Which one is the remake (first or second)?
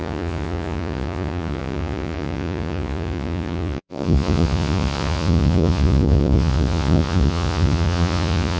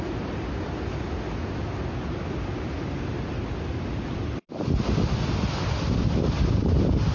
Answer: first